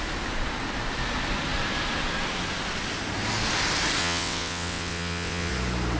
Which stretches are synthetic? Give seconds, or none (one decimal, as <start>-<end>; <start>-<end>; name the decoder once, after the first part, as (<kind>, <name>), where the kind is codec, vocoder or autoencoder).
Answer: 4.0-5.5 (vocoder, WaveNeXt)